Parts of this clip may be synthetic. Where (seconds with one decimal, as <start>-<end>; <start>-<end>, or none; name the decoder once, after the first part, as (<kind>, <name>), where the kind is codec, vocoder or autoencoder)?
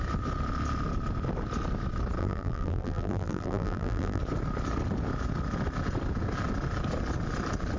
2.2-4.2 (vocoder, BigVGAN v2)